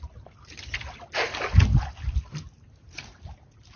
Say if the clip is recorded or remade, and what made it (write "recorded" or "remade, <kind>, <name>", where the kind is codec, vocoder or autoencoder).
recorded